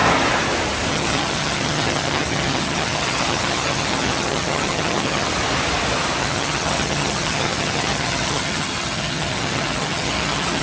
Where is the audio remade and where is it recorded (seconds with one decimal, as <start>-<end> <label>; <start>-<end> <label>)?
0.0-0.9 recorded; 0.9-5.3 remade; 5.3-6.2 recorded; 6.2-10.6 remade